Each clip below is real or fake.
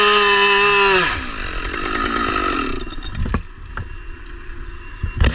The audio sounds real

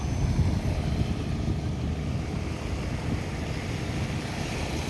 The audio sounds real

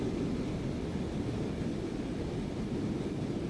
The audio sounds real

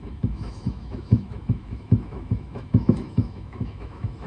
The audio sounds fake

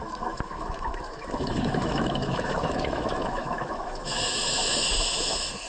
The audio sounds fake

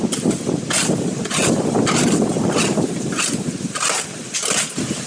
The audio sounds real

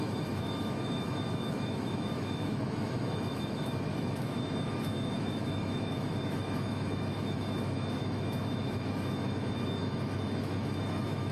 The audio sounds fake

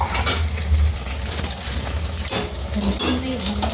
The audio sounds real